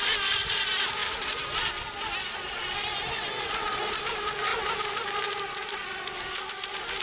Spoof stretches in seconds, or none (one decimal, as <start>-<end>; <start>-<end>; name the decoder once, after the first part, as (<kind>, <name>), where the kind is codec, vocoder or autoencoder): none